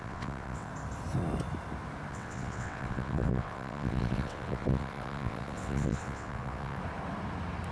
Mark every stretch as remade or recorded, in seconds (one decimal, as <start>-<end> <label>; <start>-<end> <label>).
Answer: 0.0-0.7 remade; 0.7-2.1 recorded; 2.1-6.8 remade; 6.8-7.7 recorded